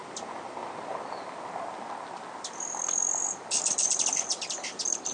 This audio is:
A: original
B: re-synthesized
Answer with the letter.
A